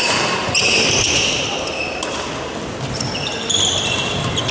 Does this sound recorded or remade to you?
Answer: recorded